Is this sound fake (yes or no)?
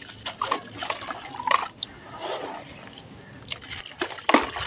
no